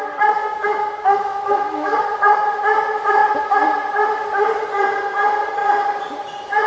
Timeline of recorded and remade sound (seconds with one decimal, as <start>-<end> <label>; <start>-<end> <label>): 0.0-0.4 recorded; 0.4-2.0 remade; 2.0-6.7 recorded